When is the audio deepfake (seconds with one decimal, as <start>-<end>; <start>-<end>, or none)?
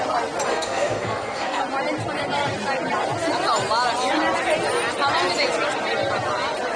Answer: 0.5-1.6